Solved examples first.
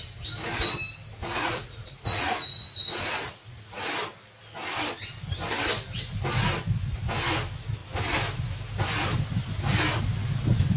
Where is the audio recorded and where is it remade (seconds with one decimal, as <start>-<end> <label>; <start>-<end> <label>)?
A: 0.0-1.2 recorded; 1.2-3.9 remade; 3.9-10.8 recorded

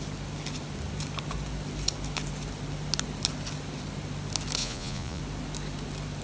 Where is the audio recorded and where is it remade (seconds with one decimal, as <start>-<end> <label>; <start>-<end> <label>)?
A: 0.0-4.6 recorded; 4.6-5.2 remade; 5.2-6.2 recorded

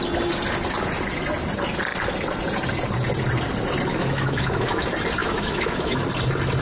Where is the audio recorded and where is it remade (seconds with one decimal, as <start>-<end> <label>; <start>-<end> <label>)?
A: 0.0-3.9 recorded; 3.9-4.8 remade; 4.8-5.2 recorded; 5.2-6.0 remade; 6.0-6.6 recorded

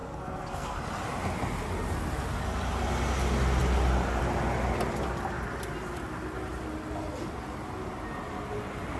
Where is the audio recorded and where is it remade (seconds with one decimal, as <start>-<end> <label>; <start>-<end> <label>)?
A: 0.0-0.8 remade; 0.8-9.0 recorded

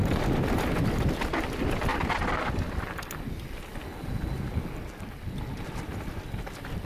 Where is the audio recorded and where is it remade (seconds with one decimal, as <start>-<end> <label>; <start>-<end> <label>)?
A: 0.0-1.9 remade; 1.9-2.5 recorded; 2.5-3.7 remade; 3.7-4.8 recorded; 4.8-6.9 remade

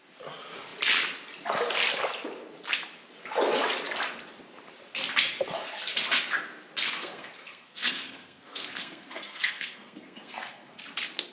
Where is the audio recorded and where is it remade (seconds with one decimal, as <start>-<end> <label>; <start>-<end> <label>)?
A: 0.0-7.0 recorded; 7.0-10.8 remade; 10.8-11.3 recorded

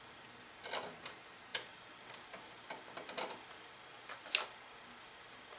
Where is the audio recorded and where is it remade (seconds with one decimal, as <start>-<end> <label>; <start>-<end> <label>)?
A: 0.0-5.6 recorded